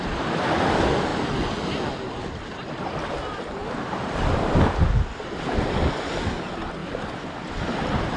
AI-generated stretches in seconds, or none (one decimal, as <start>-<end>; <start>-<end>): none